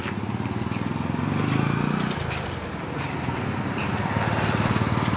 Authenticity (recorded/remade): recorded